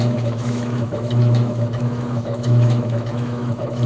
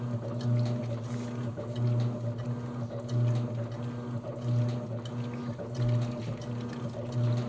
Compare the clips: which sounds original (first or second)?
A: second